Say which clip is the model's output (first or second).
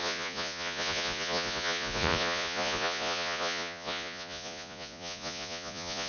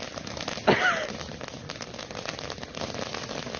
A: first